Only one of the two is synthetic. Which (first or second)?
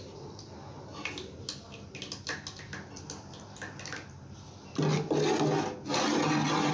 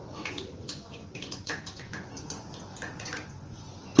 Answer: second